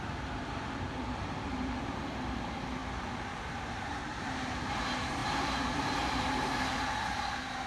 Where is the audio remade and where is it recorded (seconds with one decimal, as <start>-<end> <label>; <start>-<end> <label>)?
0.0-2.8 remade; 2.8-3.5 recorded; 3.5-7.7 remade